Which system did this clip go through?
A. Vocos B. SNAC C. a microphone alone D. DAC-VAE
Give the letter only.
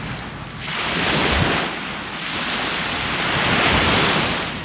C